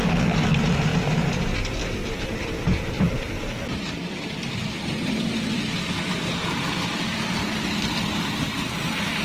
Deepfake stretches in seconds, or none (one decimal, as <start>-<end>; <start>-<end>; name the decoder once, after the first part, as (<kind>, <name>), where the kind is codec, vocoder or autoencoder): 0.5-1.0 (vocoder, BigVGAN v2); 1.8-6.1